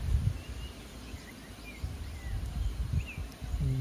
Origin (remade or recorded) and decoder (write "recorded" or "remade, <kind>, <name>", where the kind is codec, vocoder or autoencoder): recorded